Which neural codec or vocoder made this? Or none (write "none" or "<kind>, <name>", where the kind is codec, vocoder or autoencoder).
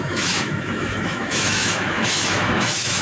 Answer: autoencoder, DAC-VAE